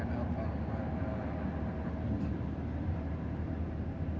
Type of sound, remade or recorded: recorded